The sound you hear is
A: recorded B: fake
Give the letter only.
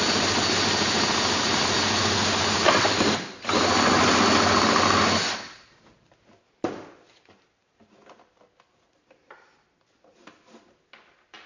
A